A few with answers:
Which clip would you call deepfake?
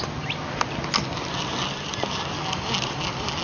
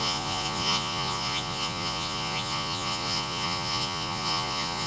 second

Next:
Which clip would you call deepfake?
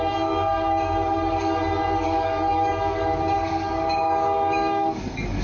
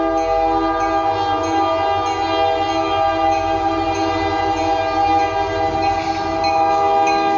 first